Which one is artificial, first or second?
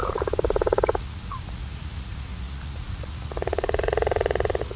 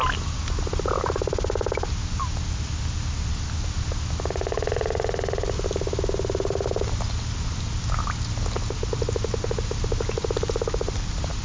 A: first